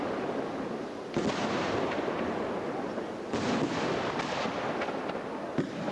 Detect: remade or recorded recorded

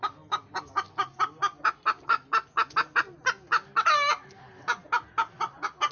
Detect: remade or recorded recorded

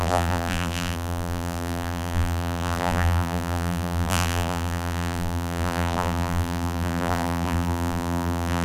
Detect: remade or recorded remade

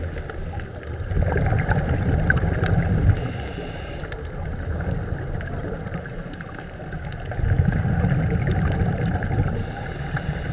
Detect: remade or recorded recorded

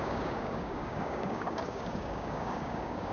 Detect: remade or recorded remade